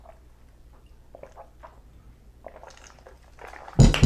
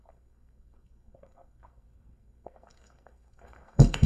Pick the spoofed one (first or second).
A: second